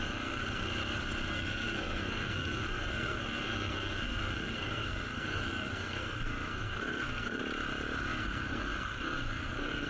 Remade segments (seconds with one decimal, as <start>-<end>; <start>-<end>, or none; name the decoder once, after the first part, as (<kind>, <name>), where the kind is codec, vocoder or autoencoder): 0.0-0.7 (codec, SNAC); 1.3-7.4; 8.1-9.9